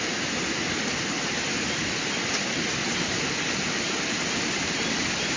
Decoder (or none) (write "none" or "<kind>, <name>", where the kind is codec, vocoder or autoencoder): none